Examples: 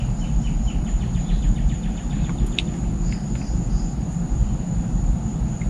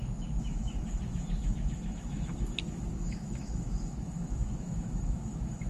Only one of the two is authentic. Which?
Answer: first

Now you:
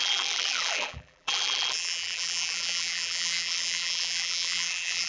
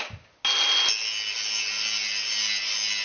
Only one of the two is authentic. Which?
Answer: second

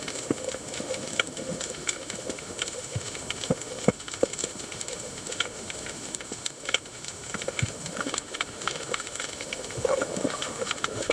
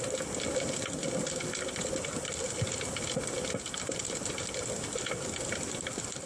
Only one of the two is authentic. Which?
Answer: second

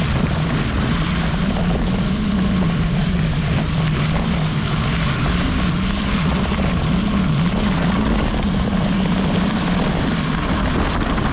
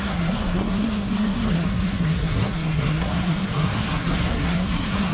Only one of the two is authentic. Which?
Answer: first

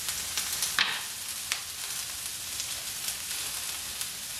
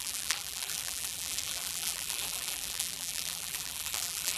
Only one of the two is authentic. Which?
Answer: first